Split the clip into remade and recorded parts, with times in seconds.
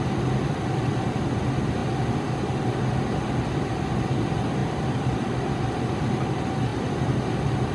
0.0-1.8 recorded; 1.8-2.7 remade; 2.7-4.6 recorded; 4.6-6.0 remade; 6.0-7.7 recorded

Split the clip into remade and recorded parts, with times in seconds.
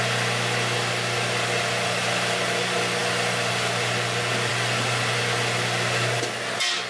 0.0-6.9 recorded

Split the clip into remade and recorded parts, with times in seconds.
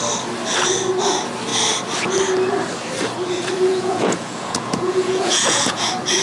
0.0-3.7 recorded; 3.7-5.8 remade; 5.8-6.2 recorded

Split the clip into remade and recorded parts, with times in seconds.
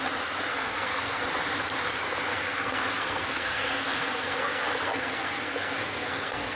0.0-0.5 recorded; 0.5-1.2 remade; 1.2-2.3 recorded; 2.3-6.6 remade